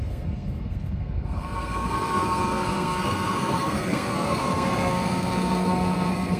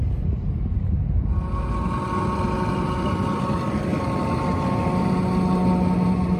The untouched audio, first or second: second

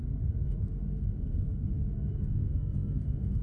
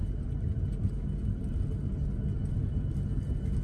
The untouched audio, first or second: second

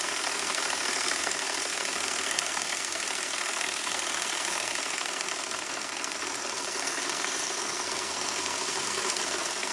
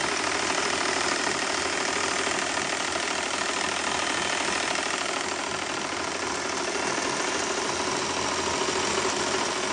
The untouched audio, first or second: second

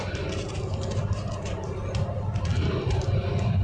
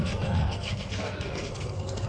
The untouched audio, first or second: first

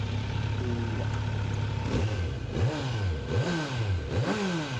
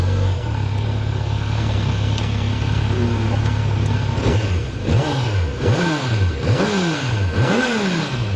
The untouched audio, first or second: first